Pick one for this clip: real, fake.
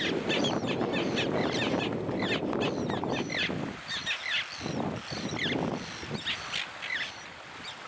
real